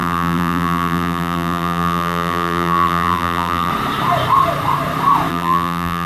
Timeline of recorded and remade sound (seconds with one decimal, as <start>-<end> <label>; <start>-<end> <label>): 0.0-3.7 remade; 3.7-5.3 recorded; 5.3-6.1 remade